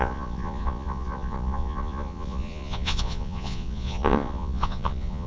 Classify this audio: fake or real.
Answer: fake